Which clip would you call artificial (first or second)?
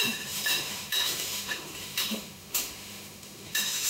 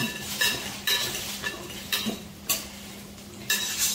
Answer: first